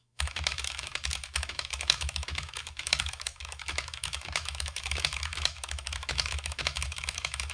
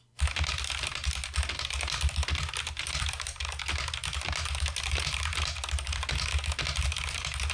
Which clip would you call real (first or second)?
second